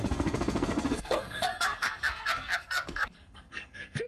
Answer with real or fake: fake